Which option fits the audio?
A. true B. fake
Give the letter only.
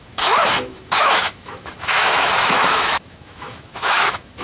B